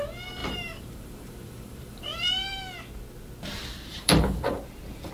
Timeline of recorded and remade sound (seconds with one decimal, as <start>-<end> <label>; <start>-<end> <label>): 0.0-0.4 recorded; 0.4-2.3 remade; 2.3-3.9 recorded; 3.9-4.6 remade; 4.6-5.1 recorded